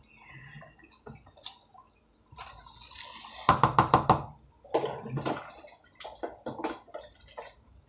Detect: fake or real real